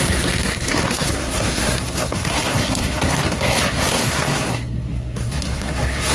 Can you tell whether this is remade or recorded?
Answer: remade